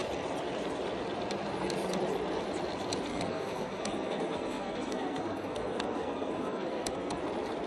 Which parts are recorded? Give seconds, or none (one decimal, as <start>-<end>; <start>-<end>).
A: 0.0-3.1; 7.2-7.7